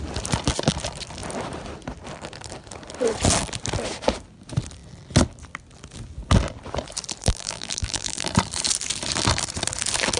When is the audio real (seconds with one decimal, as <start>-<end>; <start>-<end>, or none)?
0.0-7.2; 8.3-10.2